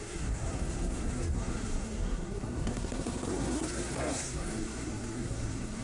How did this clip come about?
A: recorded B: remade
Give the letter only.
B